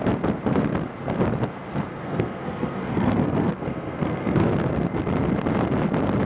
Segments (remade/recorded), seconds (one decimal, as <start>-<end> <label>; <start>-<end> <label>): 0.0-1.9 recorded; 1.9-4.5 remade; 4.5-6.3 recorded